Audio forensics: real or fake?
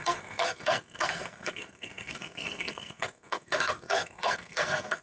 fake